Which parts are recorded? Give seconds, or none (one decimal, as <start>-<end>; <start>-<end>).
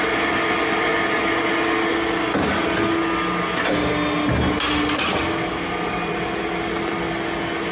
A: 0.0-7.7